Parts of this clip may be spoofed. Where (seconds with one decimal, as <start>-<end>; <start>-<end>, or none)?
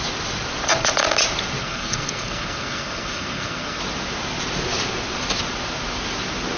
1.6-3.8